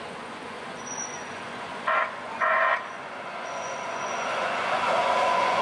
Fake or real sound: fake